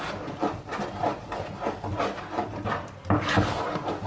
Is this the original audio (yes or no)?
yes